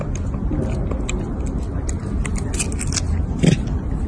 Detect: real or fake real